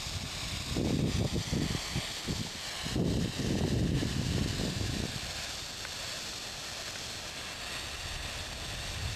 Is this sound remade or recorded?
recorded